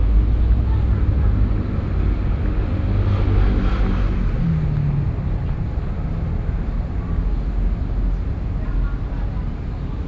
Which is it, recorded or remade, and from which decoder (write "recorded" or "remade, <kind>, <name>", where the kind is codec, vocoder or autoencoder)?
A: recorded